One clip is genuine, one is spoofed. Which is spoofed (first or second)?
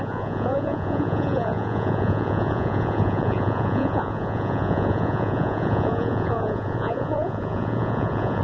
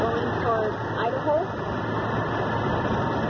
first